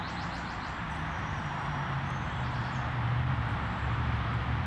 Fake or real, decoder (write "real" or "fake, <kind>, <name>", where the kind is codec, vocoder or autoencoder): fake, vocoder, BigVGAN v2